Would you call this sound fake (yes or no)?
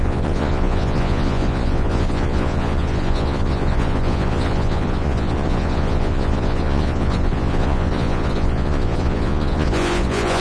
yes